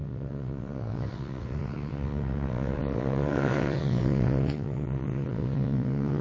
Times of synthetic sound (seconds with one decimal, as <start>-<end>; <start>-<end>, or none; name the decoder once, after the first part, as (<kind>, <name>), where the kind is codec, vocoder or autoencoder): 0.0-6.2 (vocoder, WaveNeXt)